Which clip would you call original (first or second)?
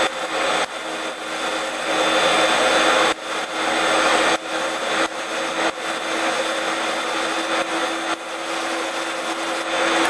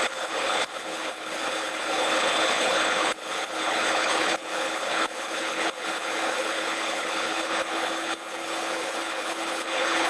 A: first